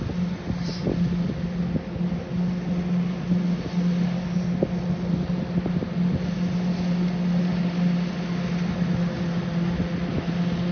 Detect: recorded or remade recorded